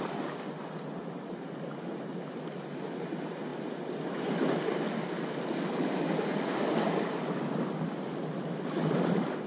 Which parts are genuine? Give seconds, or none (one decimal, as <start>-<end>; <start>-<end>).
0.0-9.5